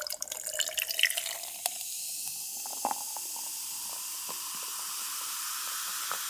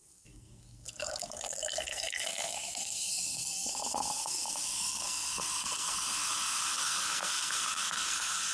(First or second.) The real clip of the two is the first